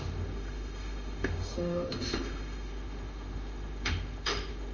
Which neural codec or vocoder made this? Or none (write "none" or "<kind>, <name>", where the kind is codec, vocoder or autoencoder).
autoencoder, DAC-VAE